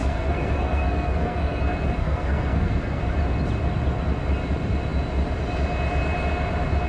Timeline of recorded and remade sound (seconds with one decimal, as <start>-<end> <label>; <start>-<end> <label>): 0.0-1.6 remade; 1.6-2.0 recorded; 2.0-3.0 remade; 3.0-6.9 recorded